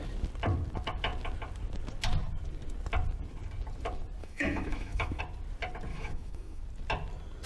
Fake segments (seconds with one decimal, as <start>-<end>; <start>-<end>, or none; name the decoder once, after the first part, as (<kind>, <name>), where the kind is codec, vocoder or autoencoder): 4.2-5.2 (autoencoder, DAC-VAE); 5.9-6.6